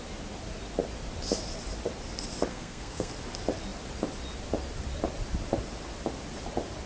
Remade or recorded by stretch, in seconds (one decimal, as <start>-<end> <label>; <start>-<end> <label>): 0.0-2.5 recorded; 2.5-3.1 remade; 3.1-6.9 recorded

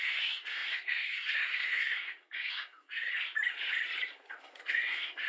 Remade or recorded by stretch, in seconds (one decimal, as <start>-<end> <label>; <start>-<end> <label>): 0.0-3.1 remade; 3.1-4.1 recorded; 4.1-5.3 remade

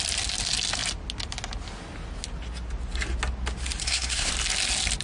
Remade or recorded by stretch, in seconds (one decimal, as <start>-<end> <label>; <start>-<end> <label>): 0.0-3.8 recorded; 3.8-4.3 remade; 4.3-5.0 recorded

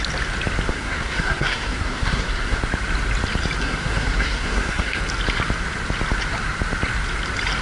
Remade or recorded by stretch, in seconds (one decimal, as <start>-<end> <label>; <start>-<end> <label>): 0.0-0.7 recorded; 0.7-2.6 remade; 2.6-3.6 recorded; 3.6-5.0 remade; 5.0-7.6 recorded

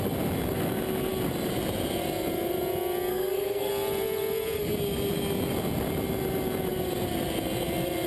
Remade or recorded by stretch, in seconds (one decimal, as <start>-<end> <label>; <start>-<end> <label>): 0.0-3.1 recorded; 3.1-3.7 remade; 3.7-8.1 recorded

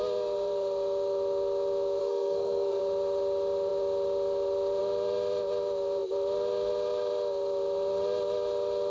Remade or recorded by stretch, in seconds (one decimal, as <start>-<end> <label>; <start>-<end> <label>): 0.0-2.0 recorded; 2.0-2.8 remade; 2.8-8.9 recorded